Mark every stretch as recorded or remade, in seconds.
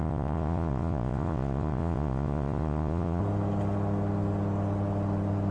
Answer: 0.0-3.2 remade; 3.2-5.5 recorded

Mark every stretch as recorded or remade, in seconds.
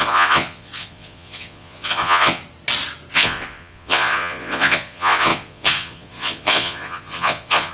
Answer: 0.0-2.4 remade; 2.4-3.1 recorded; 3.1-7.7 remade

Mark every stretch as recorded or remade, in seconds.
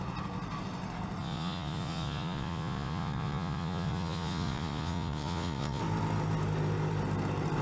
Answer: 0.0-1.2 recorded; 1.2-5.8 remade; 5.8-7.6 recorded